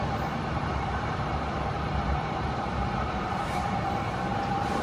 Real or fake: fake